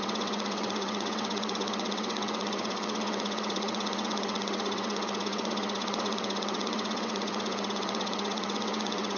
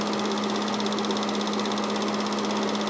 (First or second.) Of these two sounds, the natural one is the second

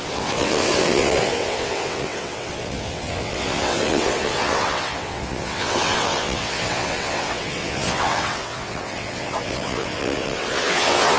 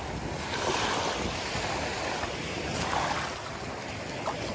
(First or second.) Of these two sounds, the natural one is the second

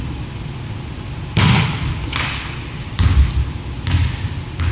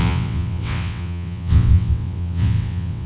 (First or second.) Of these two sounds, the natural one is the first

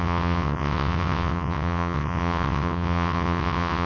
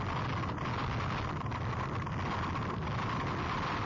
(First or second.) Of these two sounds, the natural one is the second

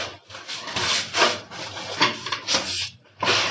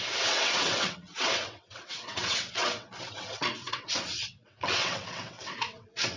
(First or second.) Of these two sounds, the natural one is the first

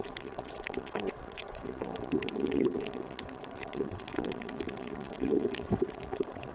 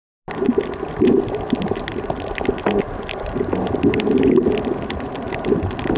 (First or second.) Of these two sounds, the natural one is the second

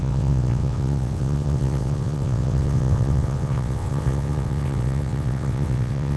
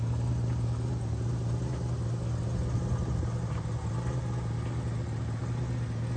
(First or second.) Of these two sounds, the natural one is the second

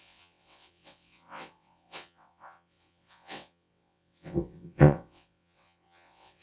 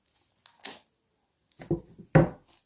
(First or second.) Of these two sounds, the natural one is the second